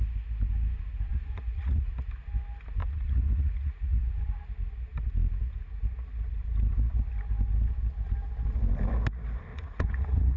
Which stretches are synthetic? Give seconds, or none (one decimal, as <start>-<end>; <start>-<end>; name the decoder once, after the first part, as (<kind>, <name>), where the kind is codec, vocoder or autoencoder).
1.1-1.9 (vocoder, Vocos); 2.8-4.2; 9.5-10.4